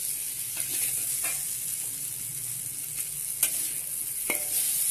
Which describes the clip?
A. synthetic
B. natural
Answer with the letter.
B